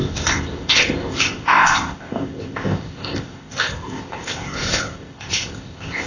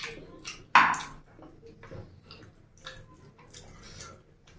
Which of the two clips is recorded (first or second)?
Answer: second